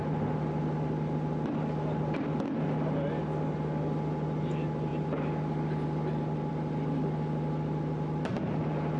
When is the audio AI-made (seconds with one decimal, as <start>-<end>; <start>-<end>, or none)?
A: none